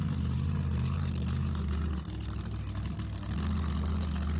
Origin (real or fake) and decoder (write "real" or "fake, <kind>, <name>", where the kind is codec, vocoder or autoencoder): real